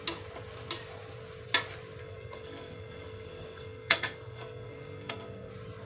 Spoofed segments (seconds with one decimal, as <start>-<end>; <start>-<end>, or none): 2.0-5.5

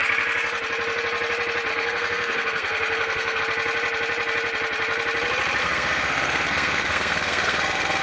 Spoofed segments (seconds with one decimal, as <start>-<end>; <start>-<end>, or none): 1.7-3.4; 5.6-8.0

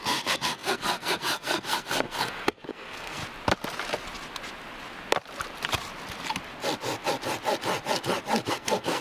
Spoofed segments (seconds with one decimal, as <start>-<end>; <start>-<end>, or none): 0.0-3.2; 8.5-9.0

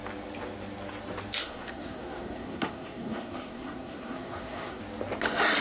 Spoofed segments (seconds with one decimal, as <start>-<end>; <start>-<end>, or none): 1.4-4.8

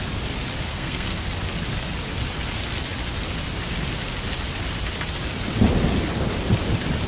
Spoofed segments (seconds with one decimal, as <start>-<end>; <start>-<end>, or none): 0.7-1.2

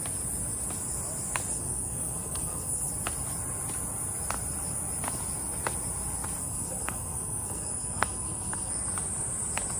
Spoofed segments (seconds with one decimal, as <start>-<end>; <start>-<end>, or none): 1.5-2.9; 6.4-8.7

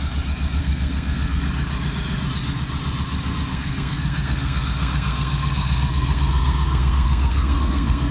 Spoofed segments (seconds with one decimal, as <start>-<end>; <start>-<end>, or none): 0.6-1.4; 3.5-8.1